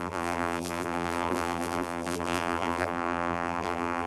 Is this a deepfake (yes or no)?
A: yes